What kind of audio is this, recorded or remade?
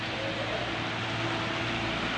recorded